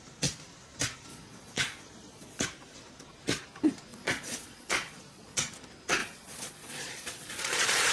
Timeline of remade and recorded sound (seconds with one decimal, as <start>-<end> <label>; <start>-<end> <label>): 0.0-1.1 recorded; 1.1-2.4 remade; 2.4-3.9 recorded; 3.9-5.5 remade; 5.5-6.0 recorded; 6.0-7.9 remade

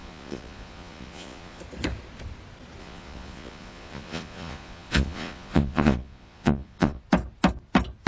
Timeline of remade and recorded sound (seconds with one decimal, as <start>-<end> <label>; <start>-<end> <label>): 0.0-1.6 remade; 1.6-2.8 recorded; 2.8-7.0 remade; 7.0-8.1 recorded

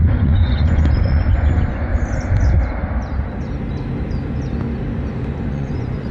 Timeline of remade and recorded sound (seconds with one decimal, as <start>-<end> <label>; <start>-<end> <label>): 0.0-1.9 remade; 1.9-5.5 recorded; 5.5-6.1 remade

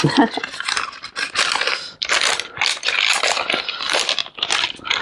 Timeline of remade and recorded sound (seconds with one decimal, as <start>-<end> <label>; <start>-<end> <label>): 0.0-5.0 recorded

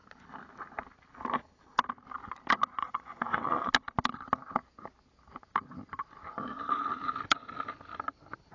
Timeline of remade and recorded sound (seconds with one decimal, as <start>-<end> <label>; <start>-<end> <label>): 0.0-2.8 recorded; 2.8-3.7 remade; 3.7-8.5 recorded

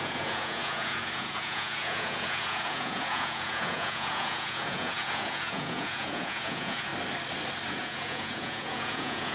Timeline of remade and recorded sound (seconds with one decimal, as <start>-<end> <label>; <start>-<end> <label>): 0.0-6.9 remade; 6.9-7.7 recorded; 7.7-9.3 remade

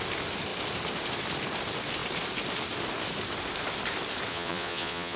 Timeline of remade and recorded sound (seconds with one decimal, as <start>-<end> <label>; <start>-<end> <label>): 0.0-4.3 recorded; 4.3-5.2 remade

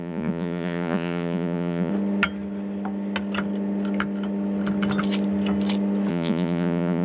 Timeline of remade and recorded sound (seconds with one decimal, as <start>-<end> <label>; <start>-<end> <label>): 0.0-1.9 remade; 1.9-6.1 recorded; 6.1-7.0 remade